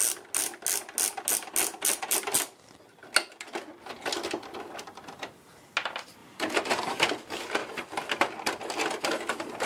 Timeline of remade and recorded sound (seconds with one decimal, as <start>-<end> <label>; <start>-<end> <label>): 0.0-6.2 recorded; 6.2-7.0 remade; 7.0-9.7 recorded